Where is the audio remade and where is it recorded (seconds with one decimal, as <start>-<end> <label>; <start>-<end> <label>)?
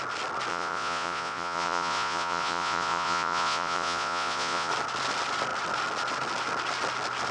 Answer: 0.0-0.5 recorded; 0.5-4.7 remade; 4.7-7.3 recorded